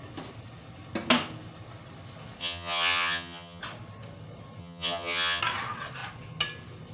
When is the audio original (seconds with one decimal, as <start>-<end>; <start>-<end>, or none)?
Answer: 0.0-2.4; 3.6-4.6; 5.4-6.9